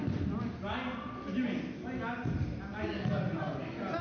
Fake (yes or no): no